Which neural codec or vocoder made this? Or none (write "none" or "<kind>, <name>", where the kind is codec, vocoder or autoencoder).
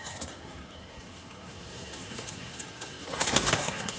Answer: codec, SNAC